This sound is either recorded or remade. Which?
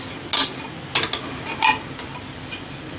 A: recorded